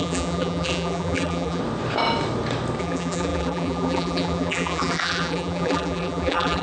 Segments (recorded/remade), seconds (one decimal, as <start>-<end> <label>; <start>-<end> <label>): 0.0-1.6 remade; 1.6-2.8 recorded; 2.8-6.6 remade